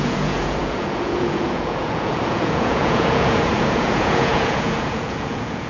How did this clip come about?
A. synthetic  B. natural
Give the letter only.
A